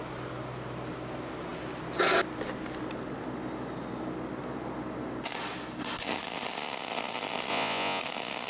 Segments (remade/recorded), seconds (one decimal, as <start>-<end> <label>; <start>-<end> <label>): 0.0-7.5 recorded; 7.5-8.0 remade; 8.0-8.5 recorded